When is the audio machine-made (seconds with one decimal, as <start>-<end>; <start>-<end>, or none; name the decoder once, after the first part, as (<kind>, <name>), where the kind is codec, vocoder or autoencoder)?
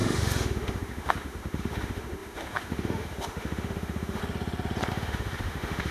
0.0-4.2 (autoencoder, DAC-VAE); 4.9-5.9